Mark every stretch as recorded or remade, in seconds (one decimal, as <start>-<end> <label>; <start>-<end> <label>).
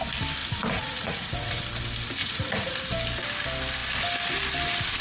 0.0-0.4 recorded; 0.4-1.6 remade; 1.6-2.2 recorded; 2.2-2.8 remade; 2.8-5.0 recorded